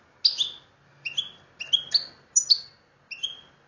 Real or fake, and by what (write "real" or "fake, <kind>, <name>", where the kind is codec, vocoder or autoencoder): real